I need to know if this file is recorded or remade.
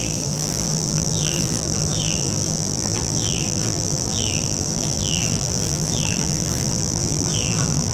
remade